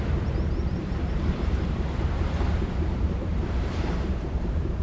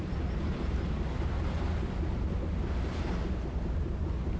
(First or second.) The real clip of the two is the second